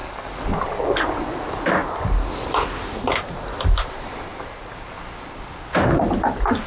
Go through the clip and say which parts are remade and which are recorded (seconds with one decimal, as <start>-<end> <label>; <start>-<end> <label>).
0.0-6.7 recorded